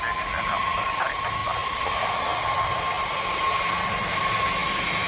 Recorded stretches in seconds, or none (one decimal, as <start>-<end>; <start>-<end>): 0.0-5.1

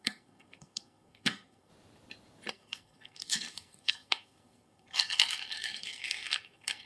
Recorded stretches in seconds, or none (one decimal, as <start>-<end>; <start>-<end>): 1.7-2.5

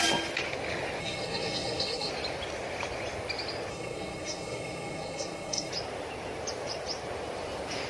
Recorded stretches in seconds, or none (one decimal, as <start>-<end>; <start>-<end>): 0.0-1.0; 2.1-3.7; 5.7-7.9

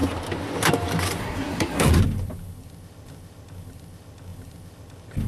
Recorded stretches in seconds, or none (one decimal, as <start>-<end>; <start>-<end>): 0.0-1.2; 2.0-5.3

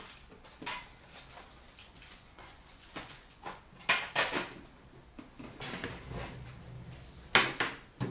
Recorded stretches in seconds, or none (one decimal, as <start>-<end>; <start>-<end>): 0.0-1.8; 3.6-8.1

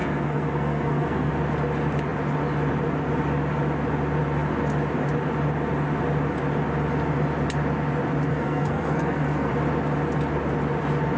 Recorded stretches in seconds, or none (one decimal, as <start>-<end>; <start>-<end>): 1.3-8.3; 9.5-11.2

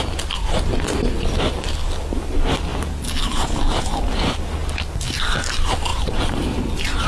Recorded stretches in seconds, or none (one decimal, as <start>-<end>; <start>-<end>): 0.0-5.9

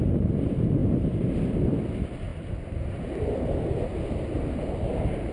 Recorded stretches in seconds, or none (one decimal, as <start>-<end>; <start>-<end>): 0.0-5.3